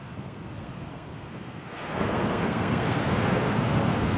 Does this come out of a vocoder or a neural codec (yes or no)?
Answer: yes